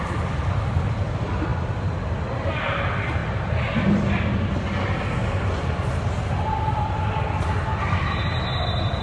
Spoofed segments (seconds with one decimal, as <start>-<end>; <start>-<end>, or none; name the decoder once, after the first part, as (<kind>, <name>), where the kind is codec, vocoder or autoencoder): 5.2-6.0 (vocoder, BigVGAN v2)